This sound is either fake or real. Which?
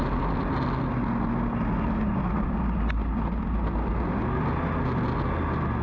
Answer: real